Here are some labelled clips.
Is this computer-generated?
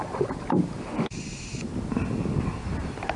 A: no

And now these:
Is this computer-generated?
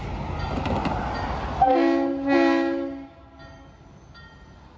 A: no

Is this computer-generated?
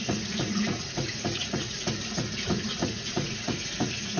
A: yes